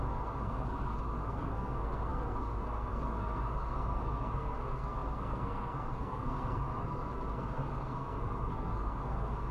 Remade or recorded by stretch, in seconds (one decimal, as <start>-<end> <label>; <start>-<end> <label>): 0.0-9.5 remade